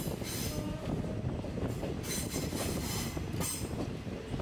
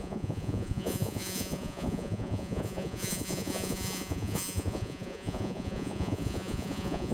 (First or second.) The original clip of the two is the first